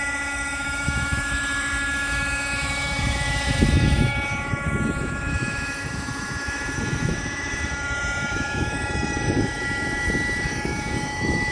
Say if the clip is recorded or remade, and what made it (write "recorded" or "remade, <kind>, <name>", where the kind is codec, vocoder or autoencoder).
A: remade, autoencoder, DAC-VAE